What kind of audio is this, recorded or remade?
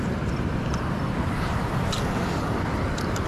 recorded